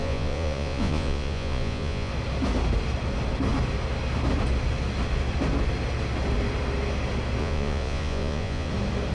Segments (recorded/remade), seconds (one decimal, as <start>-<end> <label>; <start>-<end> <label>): 0.0-2.1 remade; 2.1-7.4 recorded; 7.4-8.7 remade; 8.7-9.1 recorded